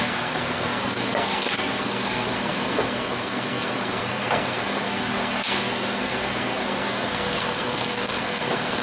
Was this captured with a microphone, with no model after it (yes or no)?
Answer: no